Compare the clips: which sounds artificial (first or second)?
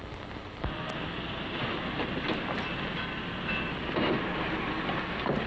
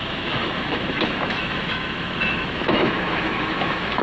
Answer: second